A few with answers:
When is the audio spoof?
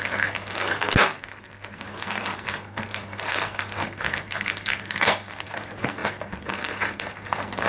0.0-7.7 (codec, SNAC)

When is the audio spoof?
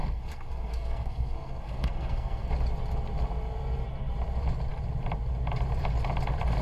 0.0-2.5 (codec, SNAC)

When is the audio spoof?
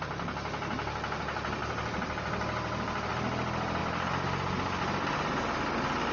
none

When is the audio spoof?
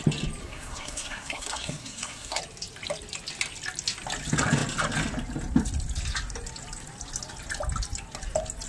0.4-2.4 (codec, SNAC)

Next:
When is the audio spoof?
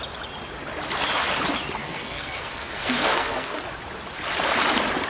1.8-3.6 (codec, SNAC)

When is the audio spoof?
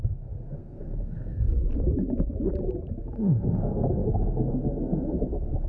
0.0-1.6 (codec, SNAC); 3.2-5.7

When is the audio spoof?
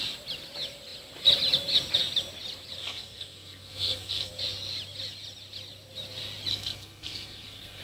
2.8-4.3 (codec, SNAC); 6.5-7.8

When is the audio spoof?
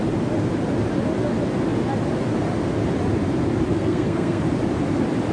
3.7-4.4 (codec, SNAC)